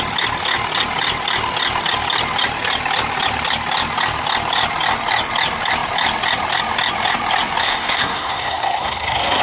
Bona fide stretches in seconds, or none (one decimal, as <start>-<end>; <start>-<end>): 0.0-7.6